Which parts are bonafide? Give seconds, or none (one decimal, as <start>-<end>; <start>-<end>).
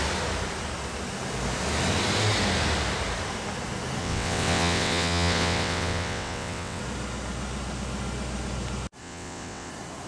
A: 0.0-4.0; 6.8-9.0; 9.7-10.1